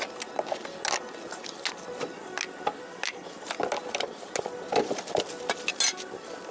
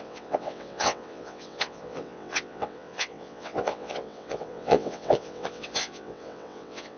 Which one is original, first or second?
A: first